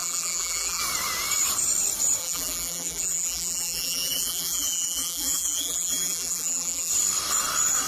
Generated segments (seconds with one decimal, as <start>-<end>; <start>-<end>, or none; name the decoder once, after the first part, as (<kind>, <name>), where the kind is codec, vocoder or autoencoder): 0.0-0.8 (vocoder, BigVGAN v2); 2.2-6.9